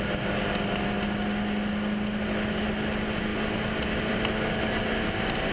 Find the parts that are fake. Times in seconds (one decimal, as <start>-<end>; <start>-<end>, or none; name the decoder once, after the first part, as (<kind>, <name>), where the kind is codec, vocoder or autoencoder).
none